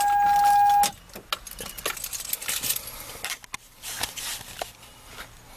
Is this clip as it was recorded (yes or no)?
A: yes